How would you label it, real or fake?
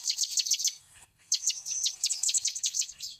fake